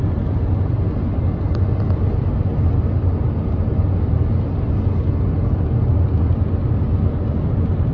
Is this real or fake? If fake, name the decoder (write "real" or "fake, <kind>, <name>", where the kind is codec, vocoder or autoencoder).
real